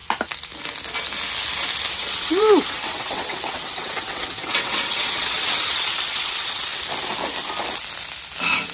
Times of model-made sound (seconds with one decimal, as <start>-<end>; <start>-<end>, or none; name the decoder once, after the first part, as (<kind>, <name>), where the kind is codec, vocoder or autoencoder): 1.9-6.7 (vocoder, WaveNeXt)